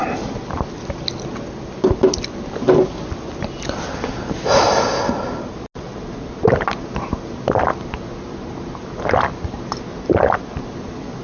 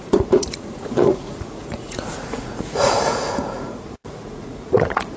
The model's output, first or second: second